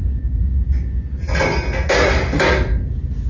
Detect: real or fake real